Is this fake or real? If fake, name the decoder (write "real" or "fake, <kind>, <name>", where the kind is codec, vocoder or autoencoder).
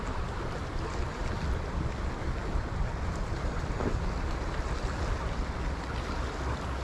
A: real